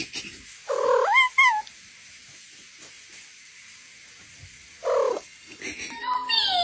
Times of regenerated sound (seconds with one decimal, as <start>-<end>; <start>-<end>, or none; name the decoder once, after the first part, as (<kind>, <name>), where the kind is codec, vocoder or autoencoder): 5.1-5.6 (codec, HILCodec)